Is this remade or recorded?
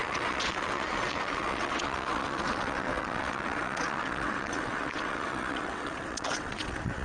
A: remade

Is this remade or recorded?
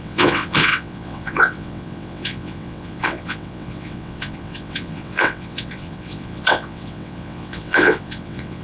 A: remade